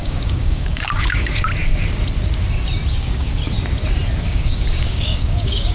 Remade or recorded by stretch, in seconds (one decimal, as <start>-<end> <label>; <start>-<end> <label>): 0.0-1.5 remade; 1.5-2.9 recorded; 2.9-3.4 remade; 3.4-4.2 recorded; 4.2-5.7 remade